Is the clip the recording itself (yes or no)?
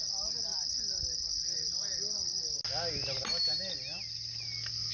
yes